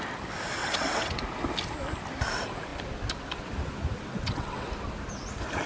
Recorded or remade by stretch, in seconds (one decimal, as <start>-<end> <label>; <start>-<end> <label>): 0.0-0.6 recorded; 0.6-1.2 remade; 1.2-4.1 recorded; 4.1-4.7 remade; 4.7-5.7 recorded